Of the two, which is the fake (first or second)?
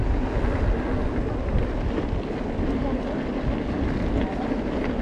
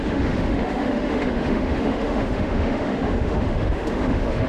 second